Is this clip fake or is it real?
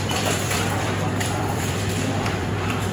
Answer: fake